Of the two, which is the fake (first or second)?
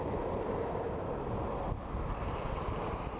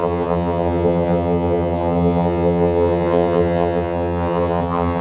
second